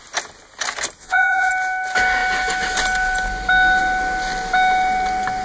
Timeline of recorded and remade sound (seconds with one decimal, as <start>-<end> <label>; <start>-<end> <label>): 0.0-1.0 recorded; 1.0-1.5 remade; 1.5-5.4 recorded